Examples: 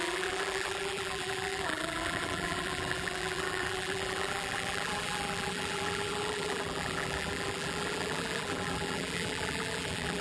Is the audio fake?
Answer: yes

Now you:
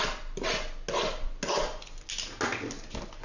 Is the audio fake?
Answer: no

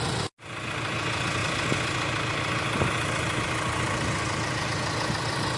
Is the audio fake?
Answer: no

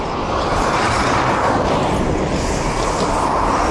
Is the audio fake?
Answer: no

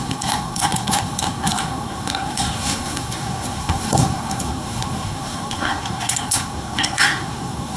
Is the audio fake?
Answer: yes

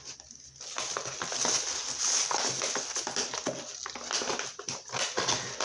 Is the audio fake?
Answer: no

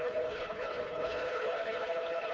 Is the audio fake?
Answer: yes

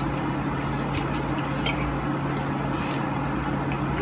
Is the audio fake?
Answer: no